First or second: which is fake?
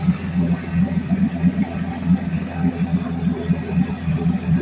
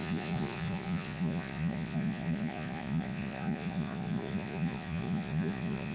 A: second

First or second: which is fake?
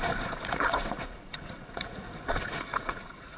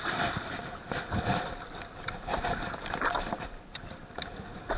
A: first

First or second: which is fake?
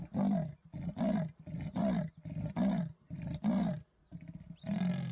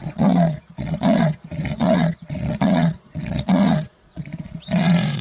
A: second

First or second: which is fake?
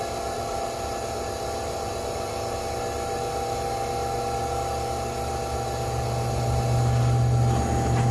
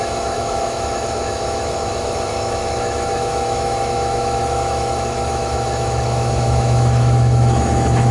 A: second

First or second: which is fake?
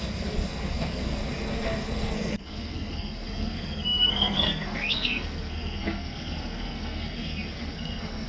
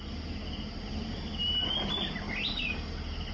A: first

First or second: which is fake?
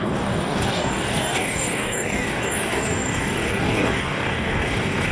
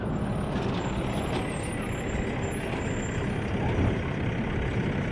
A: first